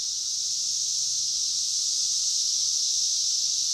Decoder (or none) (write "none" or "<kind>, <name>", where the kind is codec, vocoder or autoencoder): vocoder, BigVGAN v2